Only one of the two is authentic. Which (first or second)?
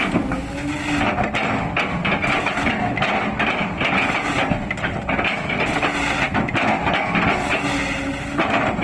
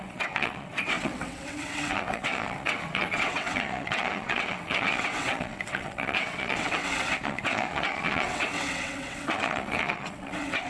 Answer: first